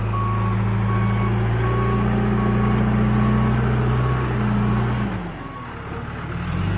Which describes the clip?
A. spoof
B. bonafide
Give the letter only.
B